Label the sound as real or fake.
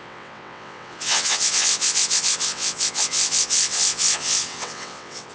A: fake